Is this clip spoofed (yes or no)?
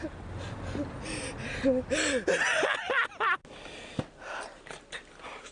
no